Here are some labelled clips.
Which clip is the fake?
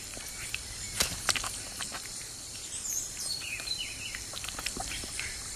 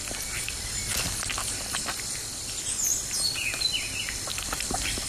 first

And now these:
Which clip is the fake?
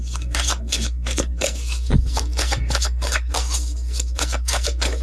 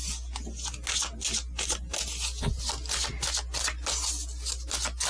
first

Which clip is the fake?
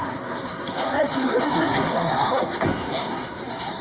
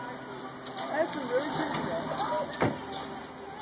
first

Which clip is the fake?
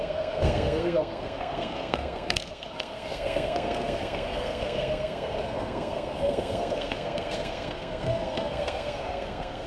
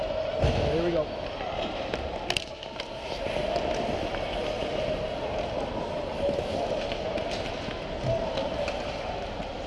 first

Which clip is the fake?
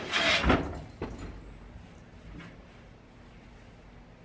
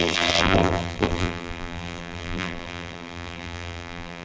second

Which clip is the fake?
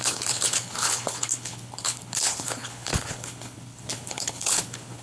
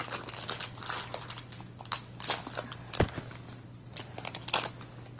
first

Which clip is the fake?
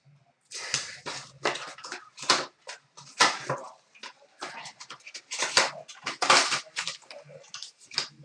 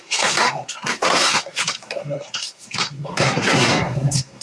second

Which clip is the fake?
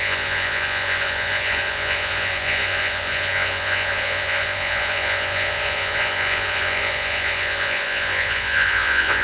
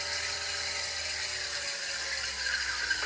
first